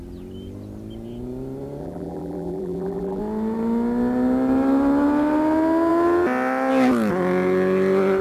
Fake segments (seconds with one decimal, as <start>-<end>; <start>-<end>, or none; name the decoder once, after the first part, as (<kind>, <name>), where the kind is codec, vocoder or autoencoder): 1.8-3.2 (vocoder, BigVGAN v2)